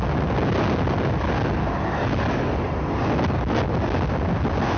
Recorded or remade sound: recorded